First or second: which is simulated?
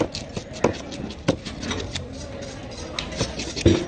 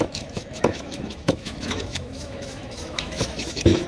second